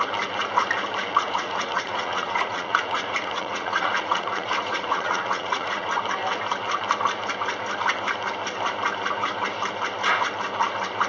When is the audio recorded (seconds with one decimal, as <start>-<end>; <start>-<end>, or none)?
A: 0.0-1.1; 6.0-11.1